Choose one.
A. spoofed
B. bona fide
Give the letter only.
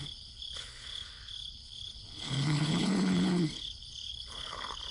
A